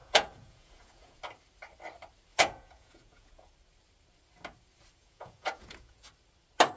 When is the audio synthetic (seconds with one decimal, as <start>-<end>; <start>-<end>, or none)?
0.0-1.2; 2.3-3.5; 5.0-6.1